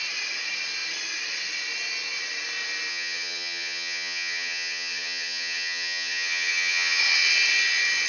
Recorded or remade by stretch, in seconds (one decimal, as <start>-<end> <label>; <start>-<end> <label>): 0.0-2.9 recorded; 2.9-7.0 remade; 7.0-8.1 recorded